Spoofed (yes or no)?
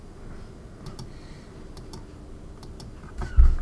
no